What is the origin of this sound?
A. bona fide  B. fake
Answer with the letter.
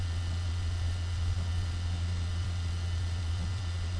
B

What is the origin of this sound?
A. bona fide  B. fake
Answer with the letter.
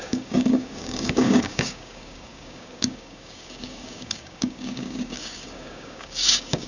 B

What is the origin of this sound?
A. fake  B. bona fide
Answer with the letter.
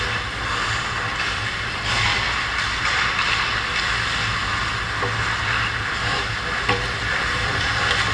B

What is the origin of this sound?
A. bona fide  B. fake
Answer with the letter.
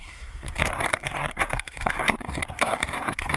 B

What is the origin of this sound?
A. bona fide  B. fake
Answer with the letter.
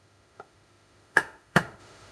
B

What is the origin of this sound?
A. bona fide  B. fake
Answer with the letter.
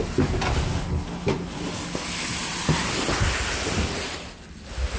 A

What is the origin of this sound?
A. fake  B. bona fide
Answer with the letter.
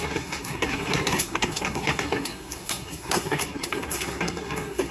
A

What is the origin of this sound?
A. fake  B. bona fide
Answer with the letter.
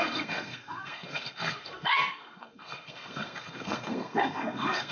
A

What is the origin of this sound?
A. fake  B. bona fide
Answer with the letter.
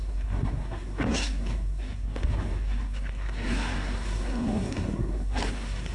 A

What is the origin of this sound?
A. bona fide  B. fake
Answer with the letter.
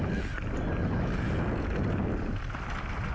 A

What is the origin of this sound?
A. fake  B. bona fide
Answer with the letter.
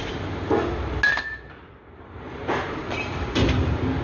B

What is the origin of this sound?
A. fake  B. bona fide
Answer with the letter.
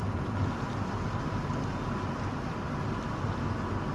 B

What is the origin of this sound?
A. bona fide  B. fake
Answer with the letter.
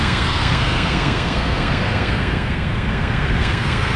B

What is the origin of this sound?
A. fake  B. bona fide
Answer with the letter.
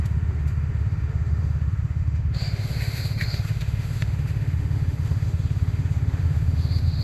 A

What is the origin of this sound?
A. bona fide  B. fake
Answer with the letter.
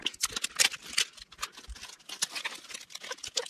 A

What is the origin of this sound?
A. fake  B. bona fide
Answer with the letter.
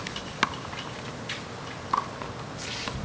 B